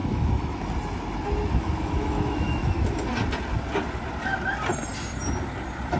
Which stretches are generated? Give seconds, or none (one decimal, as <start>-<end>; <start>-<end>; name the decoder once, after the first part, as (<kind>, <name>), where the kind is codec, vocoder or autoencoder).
0.0-0.7 (autoencoder, DAC-VAE); 1.5-3.1